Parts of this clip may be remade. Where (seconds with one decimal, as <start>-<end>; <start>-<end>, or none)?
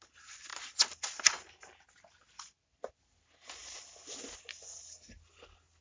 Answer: none